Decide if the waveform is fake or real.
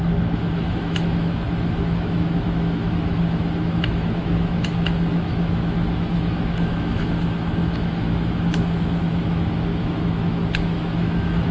fake